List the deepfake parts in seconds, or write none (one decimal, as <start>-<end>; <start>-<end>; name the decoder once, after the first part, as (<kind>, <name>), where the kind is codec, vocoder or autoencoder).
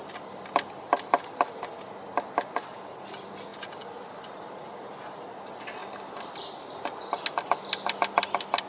none